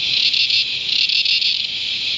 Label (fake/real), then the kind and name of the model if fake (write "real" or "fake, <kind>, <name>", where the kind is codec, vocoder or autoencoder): real